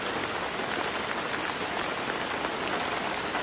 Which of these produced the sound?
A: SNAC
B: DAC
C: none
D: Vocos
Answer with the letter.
C